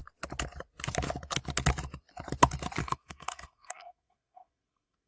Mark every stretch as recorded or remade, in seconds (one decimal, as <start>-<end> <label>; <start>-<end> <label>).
0.0-2.8 recorded; 2.8-5.1 remade